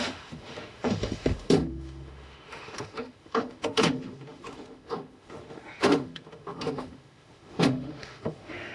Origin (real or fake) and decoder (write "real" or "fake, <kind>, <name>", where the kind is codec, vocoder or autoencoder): fake, autoencoder, DAC-VAE